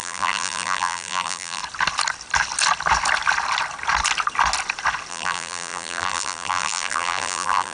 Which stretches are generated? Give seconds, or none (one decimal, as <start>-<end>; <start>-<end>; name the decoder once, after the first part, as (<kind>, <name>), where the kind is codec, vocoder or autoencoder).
0.0-1.6 (vocoder, BigVGAN v2); 5.1-7.7

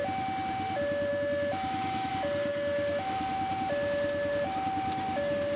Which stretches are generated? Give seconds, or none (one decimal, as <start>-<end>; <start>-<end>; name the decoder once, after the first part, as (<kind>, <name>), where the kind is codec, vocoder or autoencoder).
1.1-2.1 (autoencoder, DAC-VAE); 2.5-3.4

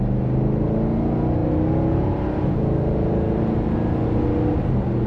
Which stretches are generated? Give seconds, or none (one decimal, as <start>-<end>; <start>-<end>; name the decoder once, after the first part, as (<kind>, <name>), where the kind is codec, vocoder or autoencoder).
none